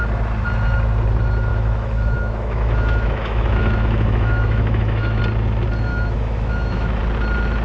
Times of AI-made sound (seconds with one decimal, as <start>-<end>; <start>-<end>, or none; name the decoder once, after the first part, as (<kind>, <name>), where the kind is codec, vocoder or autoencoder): 1.5-5.2 (autoencoder, DAC-VAE); 5.9-7.0

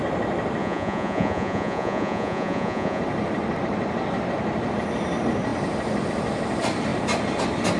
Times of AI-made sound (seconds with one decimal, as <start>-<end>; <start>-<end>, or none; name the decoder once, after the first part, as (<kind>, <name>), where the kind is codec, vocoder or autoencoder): 0.6-3.0 (vocoder, Vocos)